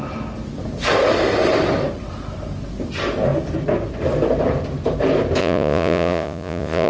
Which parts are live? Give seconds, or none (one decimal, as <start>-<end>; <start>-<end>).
0.0-5.4